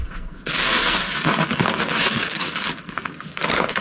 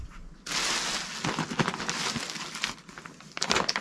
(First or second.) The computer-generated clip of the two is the first